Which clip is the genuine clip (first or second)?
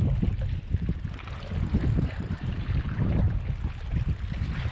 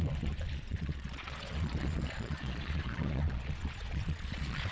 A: first